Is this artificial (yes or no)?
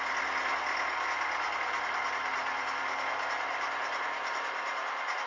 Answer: no